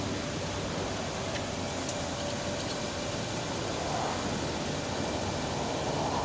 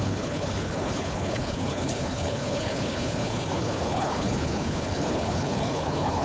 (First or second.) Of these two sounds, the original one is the first